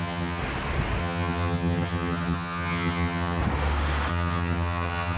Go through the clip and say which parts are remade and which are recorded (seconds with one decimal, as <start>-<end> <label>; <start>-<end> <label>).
0.0-0.4 remade; 0.4-1.0 recorded; 1.0-3.4 remade; 3.4-4.1 recorded; 4.1-5.2 remade

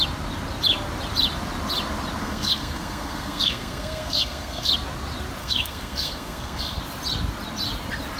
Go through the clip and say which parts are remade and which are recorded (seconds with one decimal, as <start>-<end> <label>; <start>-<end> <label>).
0.0-2.2 recorded; 2.2-4.7 remade; 4.7-5.4 recorded; 5.4-6.8 remade; 6.8-8.2 recorded